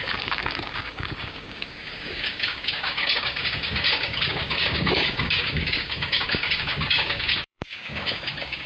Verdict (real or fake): fake